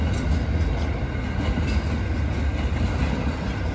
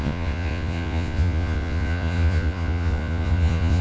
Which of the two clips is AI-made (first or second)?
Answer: second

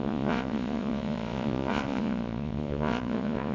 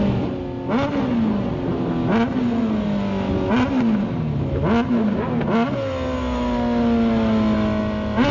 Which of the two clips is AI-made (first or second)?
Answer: first